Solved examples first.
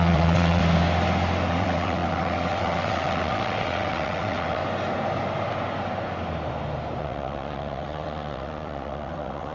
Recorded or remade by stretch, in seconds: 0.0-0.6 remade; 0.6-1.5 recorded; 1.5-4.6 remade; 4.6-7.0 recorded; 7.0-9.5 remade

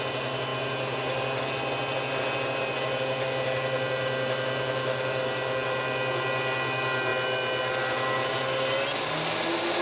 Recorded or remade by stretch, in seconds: 0.0-9.8 recorded

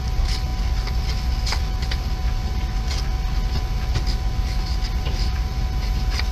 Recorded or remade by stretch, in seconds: 0.0-6.3 recorded

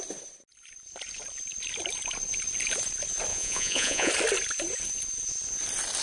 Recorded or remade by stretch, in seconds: 0.0-3.3 recorded; 3.3-4.1 remade; 4.1-6.0 recorded

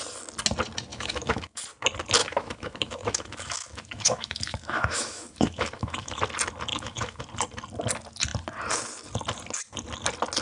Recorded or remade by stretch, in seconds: 0.0-0.9 recorded; 0.9-1.6 remade; 1.6-2.2 recorded; 2.2-6.2 remade; 6.2-6.7 recorded; 6.7-7.2 remade; 7.2-10.4 recorded

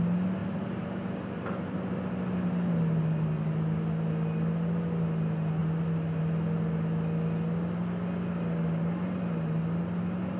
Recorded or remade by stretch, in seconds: 0.0-10.4 recorded

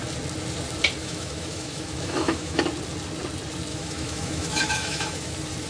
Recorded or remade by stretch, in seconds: 0.0-1.0 recorded; 1.0-2.6 remade; 2.6-3.7 recorded; 3.7-5.3 remade; 5.3-5.7 recorded